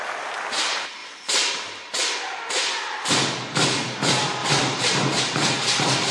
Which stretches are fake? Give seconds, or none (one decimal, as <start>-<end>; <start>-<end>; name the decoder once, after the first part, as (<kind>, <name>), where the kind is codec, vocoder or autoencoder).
1.0-2.0 (vocoder, BigVGAN v2); 4.4-5.2